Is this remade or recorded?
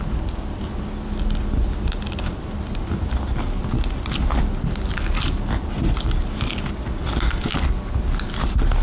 recorded